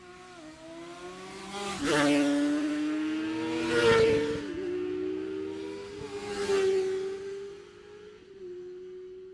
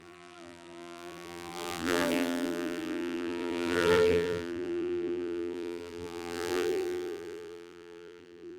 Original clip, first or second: first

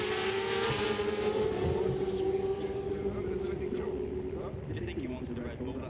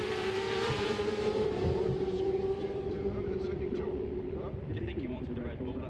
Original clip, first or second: first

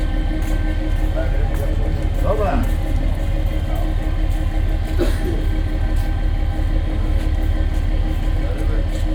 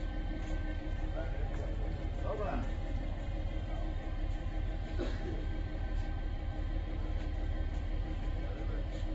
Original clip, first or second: first